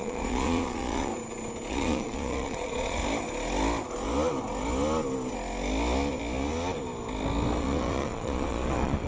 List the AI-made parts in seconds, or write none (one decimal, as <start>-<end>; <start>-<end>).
0.0-1.1; 1.7-3.0; 7.6-9.1